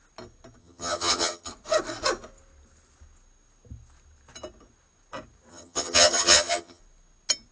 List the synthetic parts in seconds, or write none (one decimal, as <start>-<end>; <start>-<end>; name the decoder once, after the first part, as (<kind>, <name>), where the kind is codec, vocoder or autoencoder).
0.6-1.5 (vocoder, HiFi-GAN); 5.5-6.8